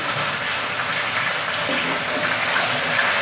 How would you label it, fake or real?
real